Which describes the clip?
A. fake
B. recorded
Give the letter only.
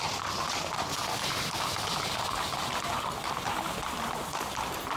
B